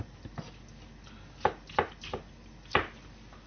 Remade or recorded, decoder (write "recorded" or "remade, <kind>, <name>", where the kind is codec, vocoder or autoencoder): recorded